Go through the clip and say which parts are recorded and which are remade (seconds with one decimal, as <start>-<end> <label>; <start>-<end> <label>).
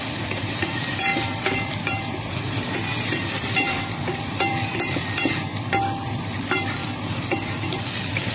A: 0.0-5.5 remade; 5.5-6.2 recorded; 6.2-6.8 remade; 6.8-7.8 recorded; 7.8-8.3 remade